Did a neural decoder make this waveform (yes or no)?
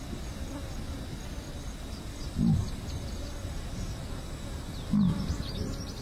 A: no